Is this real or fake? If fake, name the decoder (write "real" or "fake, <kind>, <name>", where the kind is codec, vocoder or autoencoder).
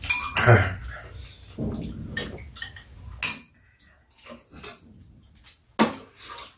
real